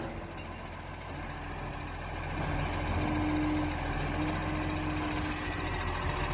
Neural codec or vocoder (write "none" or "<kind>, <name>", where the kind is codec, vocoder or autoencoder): none